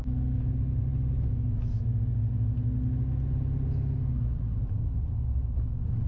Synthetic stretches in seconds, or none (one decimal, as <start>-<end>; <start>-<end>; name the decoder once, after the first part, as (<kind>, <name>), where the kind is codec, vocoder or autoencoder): none

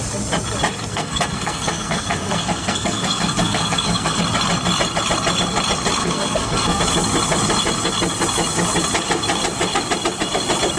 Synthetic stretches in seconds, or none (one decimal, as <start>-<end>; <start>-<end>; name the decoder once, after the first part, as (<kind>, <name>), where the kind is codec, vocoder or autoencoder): 0.9-4.2 (codec, SNAC); 6.0-6.8

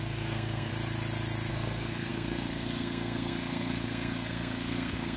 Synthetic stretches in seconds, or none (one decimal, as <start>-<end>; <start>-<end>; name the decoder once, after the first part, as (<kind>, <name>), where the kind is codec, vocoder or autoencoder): 0.0-0.7 (codec, SNAC); 1.5-5.2

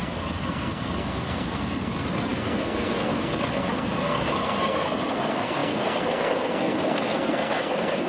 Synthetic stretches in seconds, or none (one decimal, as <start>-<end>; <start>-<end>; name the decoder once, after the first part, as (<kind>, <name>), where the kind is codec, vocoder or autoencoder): 0.0-8.1 (codec, SNAC)

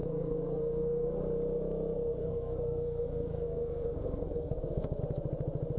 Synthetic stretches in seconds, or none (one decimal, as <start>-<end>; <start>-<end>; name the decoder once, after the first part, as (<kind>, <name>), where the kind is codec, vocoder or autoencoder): 0.0-1.2 (codec, SNAC); 2.1-5.0